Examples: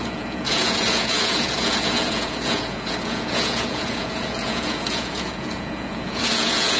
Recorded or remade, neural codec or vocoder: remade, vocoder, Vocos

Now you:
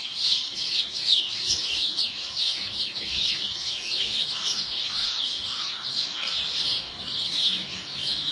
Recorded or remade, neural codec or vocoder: remade, codec, DAC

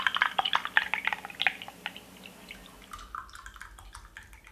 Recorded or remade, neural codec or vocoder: recorded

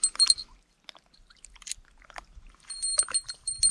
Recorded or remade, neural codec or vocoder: recorded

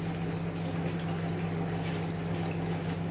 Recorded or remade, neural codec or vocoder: recorded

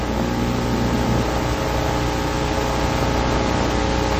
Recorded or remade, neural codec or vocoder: recorded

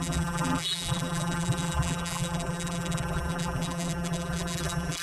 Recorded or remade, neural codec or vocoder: remade, vocoder, BigVGAN v2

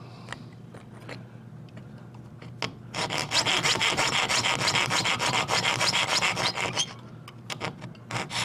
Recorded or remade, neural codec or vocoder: recorded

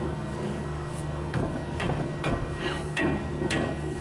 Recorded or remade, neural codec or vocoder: remade, codec, SNAC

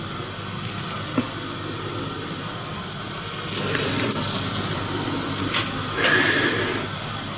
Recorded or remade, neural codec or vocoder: recorded